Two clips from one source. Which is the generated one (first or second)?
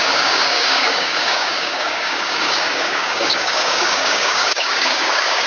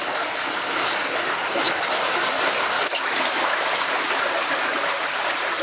first